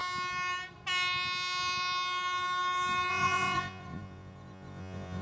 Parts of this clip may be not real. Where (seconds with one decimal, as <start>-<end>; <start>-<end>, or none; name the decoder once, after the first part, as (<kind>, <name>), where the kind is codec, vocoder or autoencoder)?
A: 3.1-5.2 (vocoder, Vocos)